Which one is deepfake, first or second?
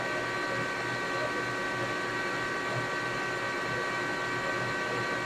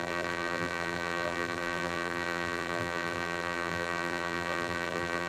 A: second